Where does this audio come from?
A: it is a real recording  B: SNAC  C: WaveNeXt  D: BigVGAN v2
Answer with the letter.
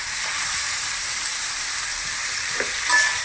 D